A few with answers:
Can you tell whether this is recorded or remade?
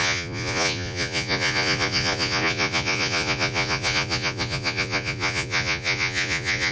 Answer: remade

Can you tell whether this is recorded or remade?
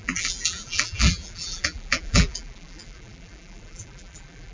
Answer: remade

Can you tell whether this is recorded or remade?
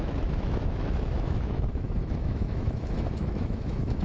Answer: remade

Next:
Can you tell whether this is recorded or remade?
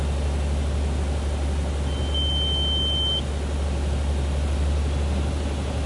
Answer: recorded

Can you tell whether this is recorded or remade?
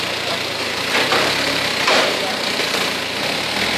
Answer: remade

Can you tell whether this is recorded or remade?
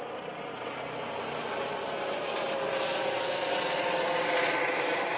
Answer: recorded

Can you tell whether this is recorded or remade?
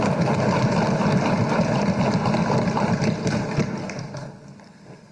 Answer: recorded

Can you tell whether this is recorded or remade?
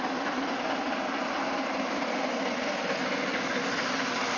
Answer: recorded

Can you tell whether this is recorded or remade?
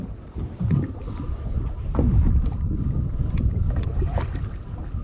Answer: recorded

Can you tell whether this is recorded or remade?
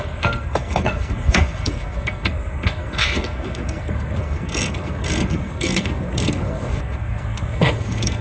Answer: remade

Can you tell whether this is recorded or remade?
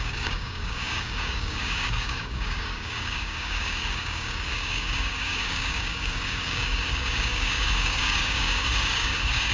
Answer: remade